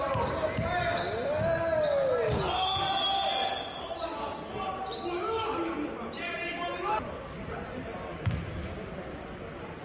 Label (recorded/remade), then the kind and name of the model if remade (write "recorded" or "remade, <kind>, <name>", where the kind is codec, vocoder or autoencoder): recorded